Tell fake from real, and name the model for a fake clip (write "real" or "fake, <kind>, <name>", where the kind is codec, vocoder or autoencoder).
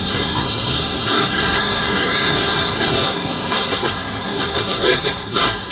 fake, codec, SNAC